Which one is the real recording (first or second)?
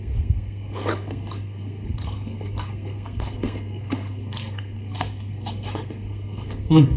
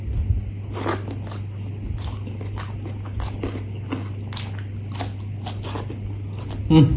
second